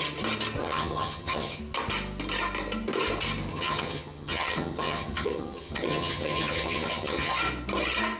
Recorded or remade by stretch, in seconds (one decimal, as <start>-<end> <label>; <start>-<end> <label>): 0.0-0.6 recorded; 0.6-1.6 remade; 1.6-3.5 recorded; 3.5-7.3 remade; 7.3-8.2 recorded